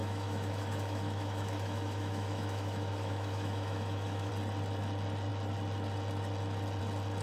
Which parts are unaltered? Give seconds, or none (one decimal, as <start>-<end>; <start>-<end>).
4.3-7.2